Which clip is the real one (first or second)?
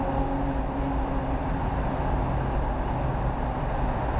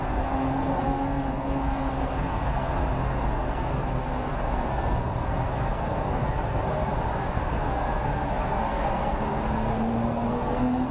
first